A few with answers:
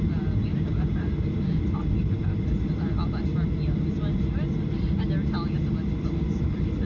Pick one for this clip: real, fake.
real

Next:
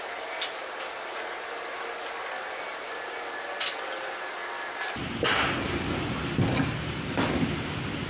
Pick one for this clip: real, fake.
real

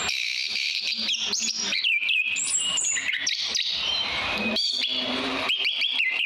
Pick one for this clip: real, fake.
fake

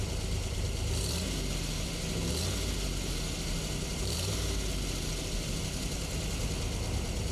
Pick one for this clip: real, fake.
real